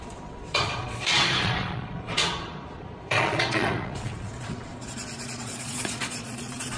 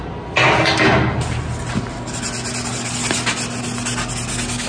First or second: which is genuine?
second